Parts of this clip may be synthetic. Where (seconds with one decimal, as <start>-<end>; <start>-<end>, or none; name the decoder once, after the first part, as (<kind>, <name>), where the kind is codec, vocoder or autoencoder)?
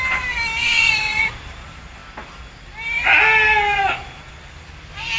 0.6-1.3 (vocoder, Vocos)